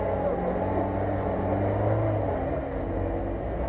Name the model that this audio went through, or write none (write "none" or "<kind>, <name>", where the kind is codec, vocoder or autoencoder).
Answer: none